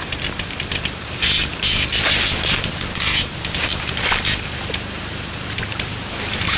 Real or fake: fake